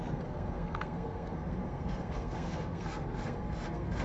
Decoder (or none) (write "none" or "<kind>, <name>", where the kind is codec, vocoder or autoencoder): codec, SNAC